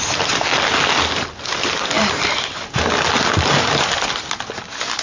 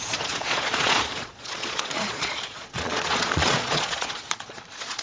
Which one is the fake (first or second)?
second